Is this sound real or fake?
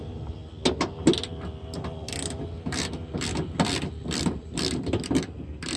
real